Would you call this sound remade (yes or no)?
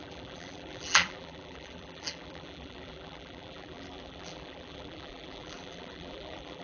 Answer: yes